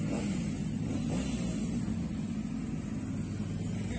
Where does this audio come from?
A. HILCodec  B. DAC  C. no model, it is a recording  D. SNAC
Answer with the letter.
C